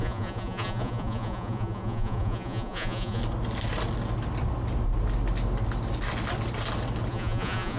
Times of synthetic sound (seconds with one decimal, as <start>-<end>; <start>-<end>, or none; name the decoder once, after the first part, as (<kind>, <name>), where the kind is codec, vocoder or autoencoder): 0.0-3.2 (vocoder, Vocos); 7.1-7.8